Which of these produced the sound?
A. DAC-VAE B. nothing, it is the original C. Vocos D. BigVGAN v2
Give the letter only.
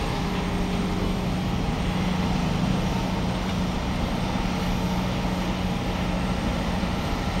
B